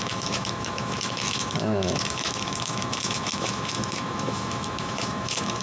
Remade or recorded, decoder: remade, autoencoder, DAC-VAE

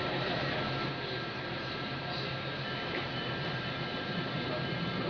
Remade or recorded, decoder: remade, vocoder, BigVGAN v2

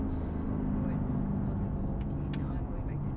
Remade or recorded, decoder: recorded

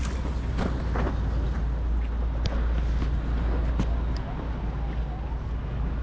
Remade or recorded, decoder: recorded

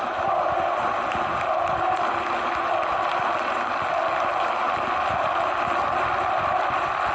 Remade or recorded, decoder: recorded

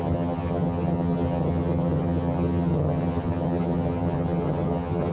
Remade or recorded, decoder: remade, vocoder, HiFi-GAN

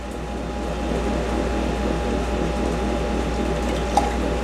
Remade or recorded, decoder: recorded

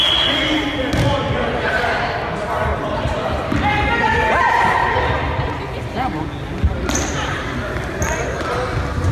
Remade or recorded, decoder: recorded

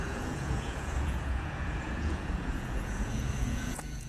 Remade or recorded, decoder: remade, vocoder, Vocos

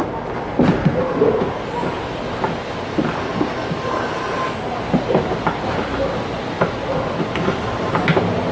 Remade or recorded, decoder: recorded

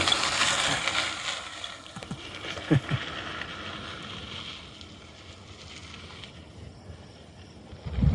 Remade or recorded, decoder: recorded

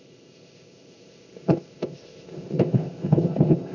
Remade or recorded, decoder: remade, codec, ZipCodec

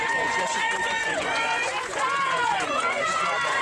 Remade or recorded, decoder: remade, vocoder, Vocos